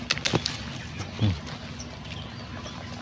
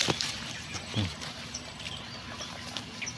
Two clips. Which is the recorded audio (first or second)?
first